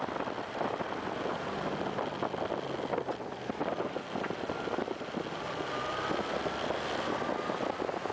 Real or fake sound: real